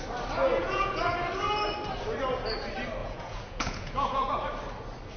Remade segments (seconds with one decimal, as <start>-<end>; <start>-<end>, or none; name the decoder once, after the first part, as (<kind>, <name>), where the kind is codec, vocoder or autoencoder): 0.5-1.0 (vocoder, Vocos); 3.0-4.3